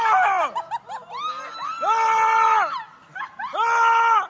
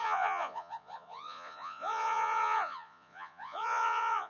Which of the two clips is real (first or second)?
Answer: first